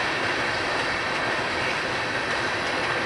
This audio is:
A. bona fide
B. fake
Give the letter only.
A